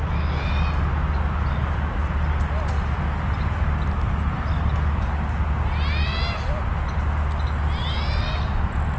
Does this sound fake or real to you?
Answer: real